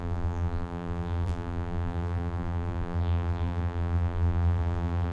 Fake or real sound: fake